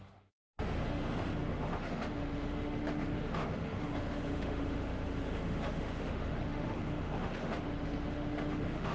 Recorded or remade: remade